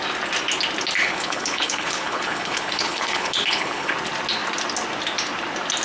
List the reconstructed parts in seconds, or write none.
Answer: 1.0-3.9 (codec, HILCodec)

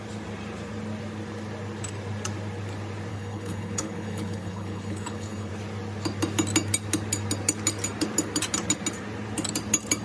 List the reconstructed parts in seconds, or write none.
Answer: 3.1-5.5 (codec, HILCodec)

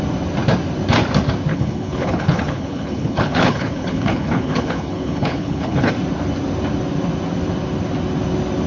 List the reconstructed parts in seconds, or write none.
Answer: 1.5-5.9 (codec, HILCodec)

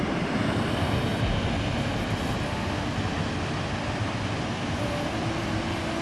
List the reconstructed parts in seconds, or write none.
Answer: none

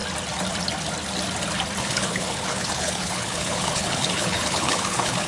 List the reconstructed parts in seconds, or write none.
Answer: 1.8-5.3 (codec, HILCodec)

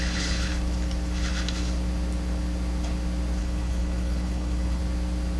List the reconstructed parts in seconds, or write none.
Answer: 0.0-0.5 (codec, HILCodec); 3.4-4.8

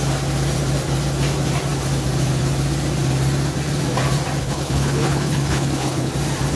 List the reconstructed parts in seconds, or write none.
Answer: 4.4-6.1 (codec, HILCodec)

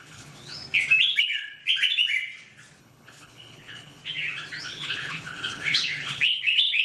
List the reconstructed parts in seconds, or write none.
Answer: 0.0-0.6 (codec, HILCodec); 1.2-1.6; 2.8-4.0; 4.6-6.8